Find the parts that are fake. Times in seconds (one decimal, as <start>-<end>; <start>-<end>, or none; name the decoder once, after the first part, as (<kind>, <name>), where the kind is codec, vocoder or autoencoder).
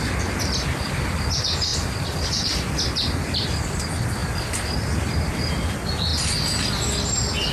none